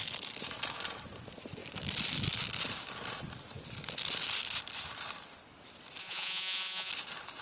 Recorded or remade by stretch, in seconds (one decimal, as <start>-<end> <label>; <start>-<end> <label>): 0.0-6.0 recorded; 6.0-6.9 remade; 6.9-7.4 recorded

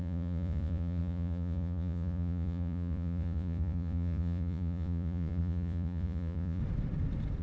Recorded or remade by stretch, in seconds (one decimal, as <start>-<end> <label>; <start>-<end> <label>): 0.0-6.6 remade; 6.6-7.4 recorded

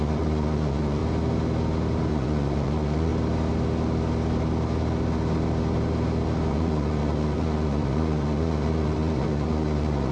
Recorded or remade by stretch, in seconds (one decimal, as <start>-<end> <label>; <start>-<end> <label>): 0.0-1.0 remade; 1.0-2.1 recorded; 2.1-3.1 remade; 3.1-6.5 recorded; 6.5-10.1 remade

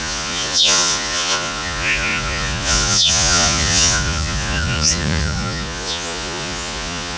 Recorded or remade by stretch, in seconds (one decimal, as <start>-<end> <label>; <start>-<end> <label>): 0.0-7.2 remade

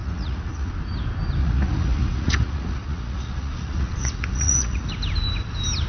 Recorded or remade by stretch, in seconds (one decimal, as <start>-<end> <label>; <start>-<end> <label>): 0.0-0.7 remade; 0.7-1.4 recorded; 1.4-4.9 remade; 4.9-5.9 recorded

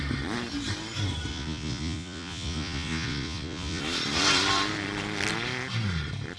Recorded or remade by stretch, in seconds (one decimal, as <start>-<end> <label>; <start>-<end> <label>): 0.0-1.3 recorded; 1.3-3.8 remade; 3.8-6.4 recorded

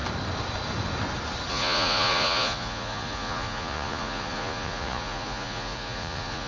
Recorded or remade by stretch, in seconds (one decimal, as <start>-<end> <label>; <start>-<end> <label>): 0.0-1.5 recorded; 1.5-6.5 remade

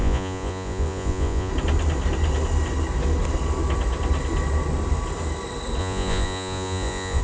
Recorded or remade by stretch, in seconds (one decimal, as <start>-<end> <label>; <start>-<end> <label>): 0.0-1.5 remade; 1.5-5.8 recorded; 5.8-7.2 remade